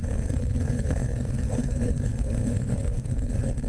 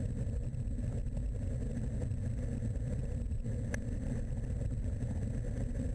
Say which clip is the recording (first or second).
second